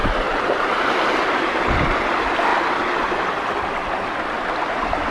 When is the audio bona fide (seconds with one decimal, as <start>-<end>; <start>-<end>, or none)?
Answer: 0.0-5.1